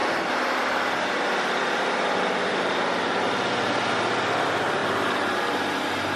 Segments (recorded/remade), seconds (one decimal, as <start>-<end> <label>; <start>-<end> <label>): 0.0-6.2 recorded